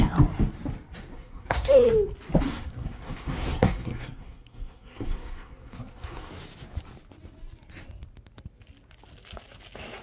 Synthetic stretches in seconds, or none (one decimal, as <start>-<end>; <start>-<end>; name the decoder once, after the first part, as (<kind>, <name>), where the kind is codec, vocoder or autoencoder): 1.1-1.9 (codec, SNAC); 2.5-6.3